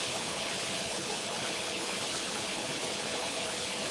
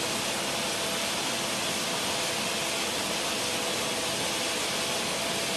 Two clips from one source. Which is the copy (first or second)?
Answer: first